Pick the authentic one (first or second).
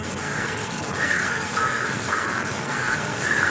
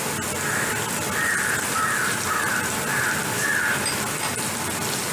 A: second